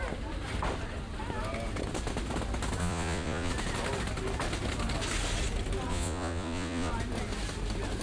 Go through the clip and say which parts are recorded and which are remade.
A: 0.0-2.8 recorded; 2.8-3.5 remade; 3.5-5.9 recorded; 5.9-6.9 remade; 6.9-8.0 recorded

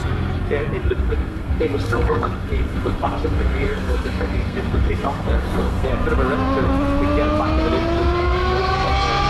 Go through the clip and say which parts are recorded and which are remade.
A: 0.0-0.8 recorded; 0.8-5.9 remade; 5.9-8.2 recorded; 8.2-8.9 remade; 8.9-9.3 recorded

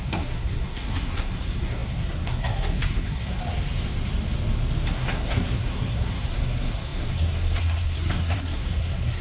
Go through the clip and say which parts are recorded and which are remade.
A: 0.0-3.4 remade; 3.4-4.9 recorded; 4.9-9.2 remade

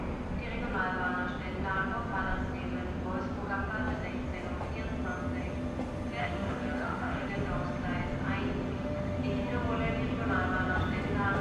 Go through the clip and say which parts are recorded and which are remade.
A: 0.0-6.2 recorded; 6.2-7.3 remade; 7.3-8.7 recorded; 8.7-9.2 remade; 9.2-11.4 recorded

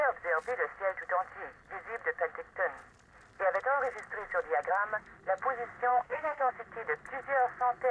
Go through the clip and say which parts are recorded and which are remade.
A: 0.0-5.9 recorded; 5.9-6.5 remade; 6.5-7.9 recorded

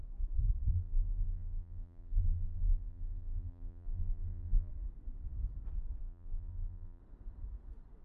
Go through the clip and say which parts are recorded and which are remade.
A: 0.0-0.7 recorded; 0.7-4.7 remade; 4.7-6.0 recorded; 6.0-7.0 remade; 7.0-8.0 recorded

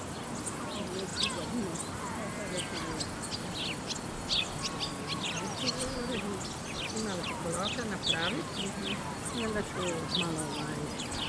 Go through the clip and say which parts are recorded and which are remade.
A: 0.0-11.3 recorded

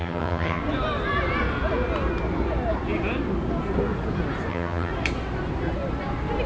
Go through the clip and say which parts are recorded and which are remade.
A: 0.0-0.6 remade; 0.6-4.5 recorded; 4.5-4.9 remade; 4.9-6.5 recorded